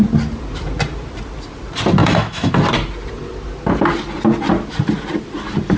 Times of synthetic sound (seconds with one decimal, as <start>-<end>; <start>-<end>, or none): 2.0-2.5